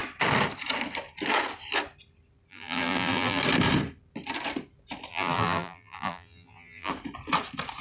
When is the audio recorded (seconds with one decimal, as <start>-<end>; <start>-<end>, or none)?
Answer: 0.0-2.5; 3.4-5.1; 6.9-7.8